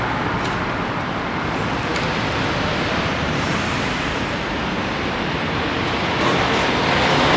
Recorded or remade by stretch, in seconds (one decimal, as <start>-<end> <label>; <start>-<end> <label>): 0.0-7.4 recorded